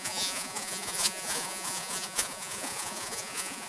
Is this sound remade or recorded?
remade